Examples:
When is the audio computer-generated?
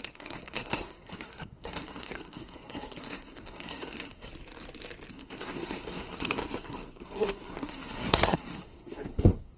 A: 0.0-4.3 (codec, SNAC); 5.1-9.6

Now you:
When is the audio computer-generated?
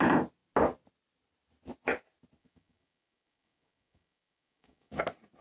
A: 2.4-5.0 (codec, DAC)